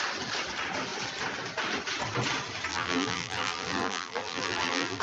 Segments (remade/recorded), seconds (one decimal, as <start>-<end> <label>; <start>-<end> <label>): 0.0-2.7 recorded; 2.7-5.0 remade